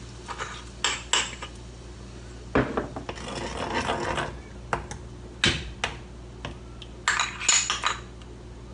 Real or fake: real